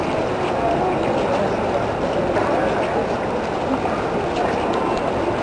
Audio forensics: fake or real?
real